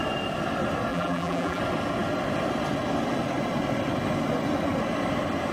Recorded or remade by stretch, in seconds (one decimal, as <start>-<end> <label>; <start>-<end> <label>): 0.0-0.9 recorded; 0.9-1.6 remade; 1.6-5.5 recorded